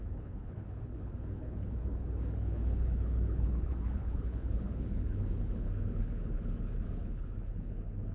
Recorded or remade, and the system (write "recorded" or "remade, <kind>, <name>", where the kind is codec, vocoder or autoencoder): remade, codec, HILCodec